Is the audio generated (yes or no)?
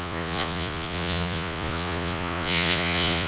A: yes